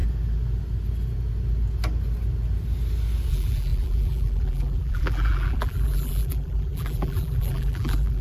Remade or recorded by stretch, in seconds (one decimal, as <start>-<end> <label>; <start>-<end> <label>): 0.0-3.3 recorded; 3.3-8.2 remade